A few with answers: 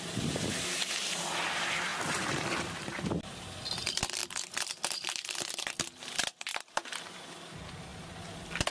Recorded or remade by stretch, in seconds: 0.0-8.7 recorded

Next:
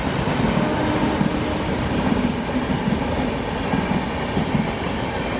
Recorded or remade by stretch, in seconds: 0.0-5.4 recorded

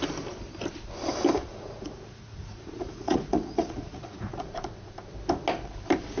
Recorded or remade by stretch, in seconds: 0.0-1.5 recorded; 1.5-4.7 remade; 4.7-6.2 recorded

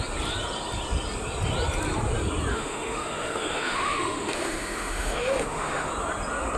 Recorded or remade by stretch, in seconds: 0.0-2.5 recorded; 2.5-5.9 remade; 5.9-6.6 recorded